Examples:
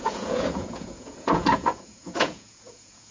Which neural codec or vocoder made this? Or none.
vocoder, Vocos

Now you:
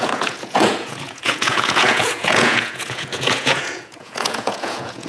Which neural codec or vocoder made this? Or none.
vocoder, Vocos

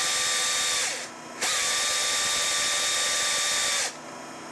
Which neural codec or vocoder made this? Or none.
none